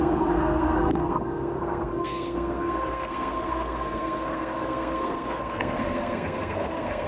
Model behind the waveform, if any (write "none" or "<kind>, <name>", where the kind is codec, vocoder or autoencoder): codec, SNAC